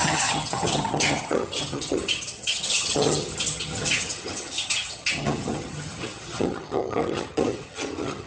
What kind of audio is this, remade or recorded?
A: remade